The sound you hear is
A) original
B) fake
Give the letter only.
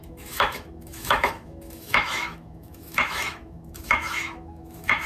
B